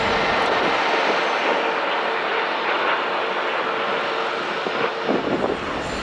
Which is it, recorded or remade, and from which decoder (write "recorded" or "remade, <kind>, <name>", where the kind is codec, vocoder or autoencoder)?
recorded